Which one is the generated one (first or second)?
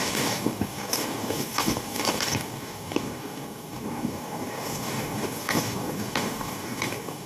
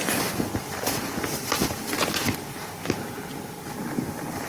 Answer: first